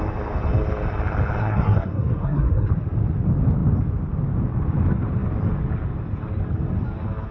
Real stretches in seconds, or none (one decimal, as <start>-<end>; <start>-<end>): 0.0-1.4; 2.7-7.3